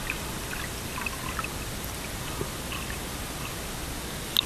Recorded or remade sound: recorded